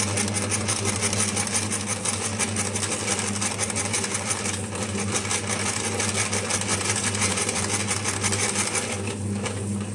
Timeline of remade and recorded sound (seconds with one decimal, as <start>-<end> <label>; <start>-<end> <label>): 0.0-6.7 recorded; 6.7-7.6 remade; 7.6-9.9 recorded